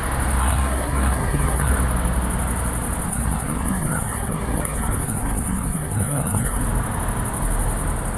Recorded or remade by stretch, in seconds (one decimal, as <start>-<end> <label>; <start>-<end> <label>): 0.0-0.4 recorded; 0.4-1.7 remade; 1.7-3.1 recorded; 3.1-6.6 remade; 6.6-8.2 recorded